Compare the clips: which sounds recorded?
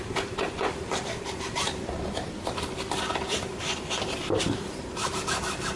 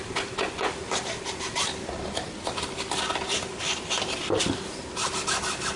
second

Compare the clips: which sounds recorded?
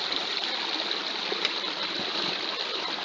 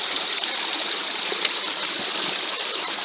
first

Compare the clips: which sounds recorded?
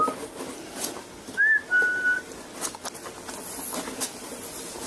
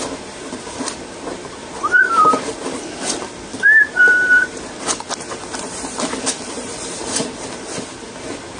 first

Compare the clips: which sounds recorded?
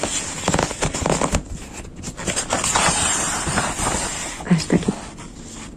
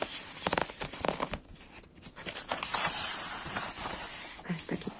first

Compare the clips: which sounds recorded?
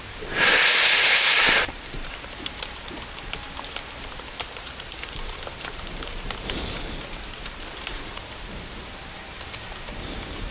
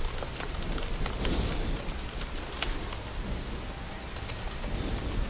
second